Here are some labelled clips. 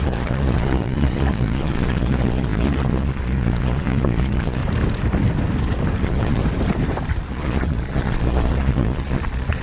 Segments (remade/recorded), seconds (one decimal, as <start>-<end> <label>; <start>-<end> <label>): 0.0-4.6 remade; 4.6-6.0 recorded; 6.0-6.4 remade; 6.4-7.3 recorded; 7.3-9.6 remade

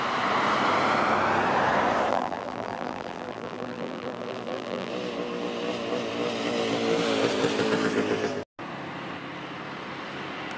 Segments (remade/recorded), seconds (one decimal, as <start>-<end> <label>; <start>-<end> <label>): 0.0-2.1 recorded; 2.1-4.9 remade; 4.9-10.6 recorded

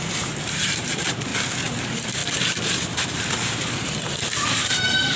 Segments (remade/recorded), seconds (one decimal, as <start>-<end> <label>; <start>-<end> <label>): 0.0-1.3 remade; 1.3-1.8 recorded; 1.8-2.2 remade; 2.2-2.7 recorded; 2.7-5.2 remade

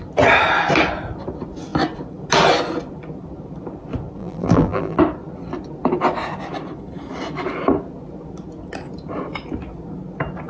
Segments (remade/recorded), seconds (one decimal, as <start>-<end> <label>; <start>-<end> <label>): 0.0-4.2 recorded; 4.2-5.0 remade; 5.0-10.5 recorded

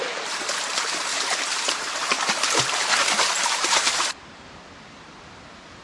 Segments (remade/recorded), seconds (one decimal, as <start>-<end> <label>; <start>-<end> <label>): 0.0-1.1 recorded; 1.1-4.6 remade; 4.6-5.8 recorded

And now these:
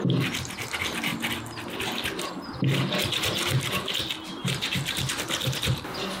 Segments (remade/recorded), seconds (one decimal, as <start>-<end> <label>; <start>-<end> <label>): 0.0-4.4 recorded; 4.4-5.1 remade; 5.1-6.2 recorded

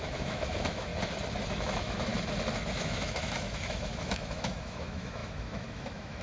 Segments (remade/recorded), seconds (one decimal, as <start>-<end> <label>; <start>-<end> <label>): 0.0-0.9 remade; 0.9-1.5 recorded; 1.5-2.1 remade; 2.1-2.7 recorded; 2.7-6.2 remade